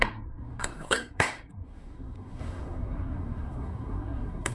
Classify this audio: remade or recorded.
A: remade